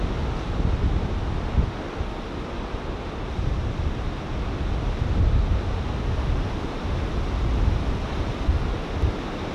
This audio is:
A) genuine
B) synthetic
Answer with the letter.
A